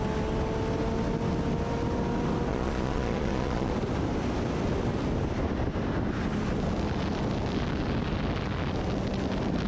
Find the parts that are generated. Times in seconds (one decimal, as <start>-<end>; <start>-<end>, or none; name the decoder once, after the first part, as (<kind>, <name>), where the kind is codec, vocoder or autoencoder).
2.5-3.7 (vocoder, Vocos)